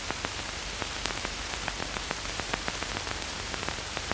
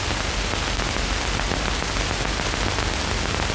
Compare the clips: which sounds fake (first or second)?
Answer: first